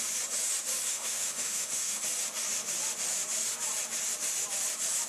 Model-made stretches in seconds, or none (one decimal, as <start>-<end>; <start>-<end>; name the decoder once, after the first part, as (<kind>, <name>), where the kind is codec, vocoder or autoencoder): 0.9-2.0 (autoencoder, DAC-VAE)